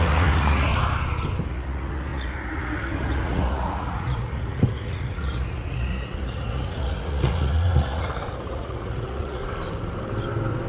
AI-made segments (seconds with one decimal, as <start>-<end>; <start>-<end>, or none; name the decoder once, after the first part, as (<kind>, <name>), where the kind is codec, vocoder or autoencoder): 0.0-0.7 (vocoder, Vocos); 1.5-9.4